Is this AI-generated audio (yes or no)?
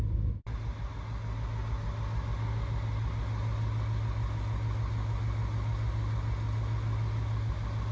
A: no